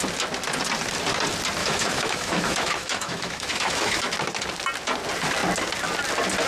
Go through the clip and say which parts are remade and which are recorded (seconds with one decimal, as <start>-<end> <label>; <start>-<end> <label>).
0.0-1.6 recorded; 1.6-4.1 remade; 4.1-6.5 recorded